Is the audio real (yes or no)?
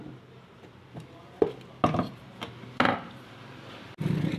yes